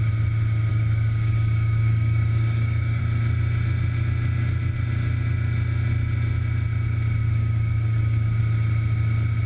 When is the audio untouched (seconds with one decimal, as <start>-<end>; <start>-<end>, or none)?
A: 0.0-0.7; 3.0-7.2; 8.4-9.5